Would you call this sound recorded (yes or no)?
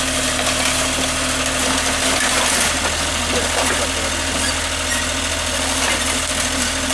yes